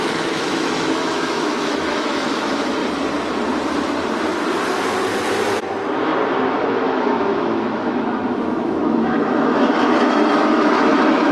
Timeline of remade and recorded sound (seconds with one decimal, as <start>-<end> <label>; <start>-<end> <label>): 0.0-2.8 remade; 2.8-6.6 recorded; 6.6-11.3 remade